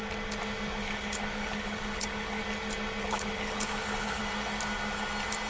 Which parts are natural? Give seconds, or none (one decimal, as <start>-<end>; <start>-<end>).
0.0-0.8; 2.4-3.0; 4.2-5.5